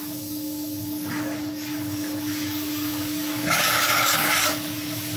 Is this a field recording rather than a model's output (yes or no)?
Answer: no